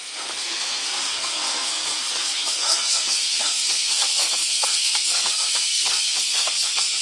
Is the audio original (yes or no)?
no